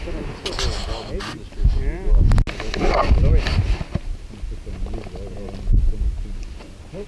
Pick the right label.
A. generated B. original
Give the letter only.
B